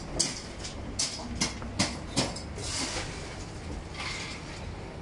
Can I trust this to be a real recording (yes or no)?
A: yes